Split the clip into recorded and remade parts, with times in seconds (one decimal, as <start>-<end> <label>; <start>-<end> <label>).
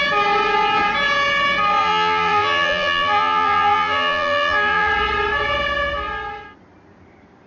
0.0-1.8 recorded; 1.8-4.9 remade; 4.9-7.5 recorded